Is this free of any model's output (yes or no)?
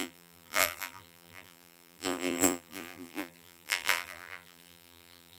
no